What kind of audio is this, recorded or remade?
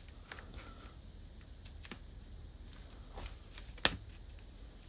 recorded